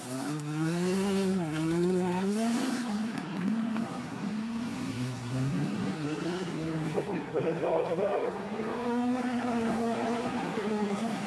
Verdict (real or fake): fake